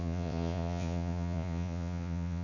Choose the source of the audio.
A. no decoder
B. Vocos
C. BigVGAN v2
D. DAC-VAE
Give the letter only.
B